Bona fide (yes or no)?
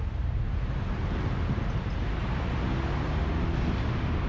yes